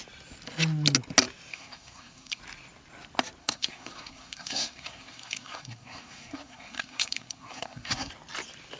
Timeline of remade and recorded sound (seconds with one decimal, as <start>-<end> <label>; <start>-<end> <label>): 0.0-1.5 recorded; 1.5-2.4 remade; 2.4-3.4 recorded; 3.4-8.1 remade; 8.1-8.8 recorded